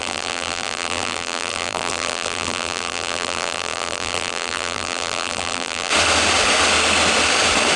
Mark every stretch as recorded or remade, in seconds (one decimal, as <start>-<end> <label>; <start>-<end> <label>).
0.0-5.9 remade; 5.9-7.8 recorded